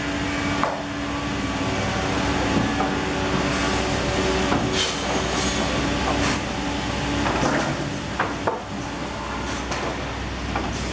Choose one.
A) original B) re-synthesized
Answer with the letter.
A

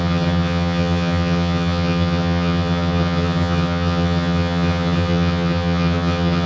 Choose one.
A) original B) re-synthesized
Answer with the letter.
B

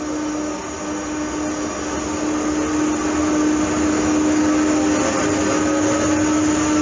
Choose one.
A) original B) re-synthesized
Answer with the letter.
A